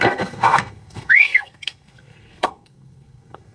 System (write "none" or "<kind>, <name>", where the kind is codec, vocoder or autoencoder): codec, SNAC